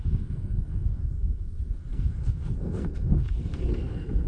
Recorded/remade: remade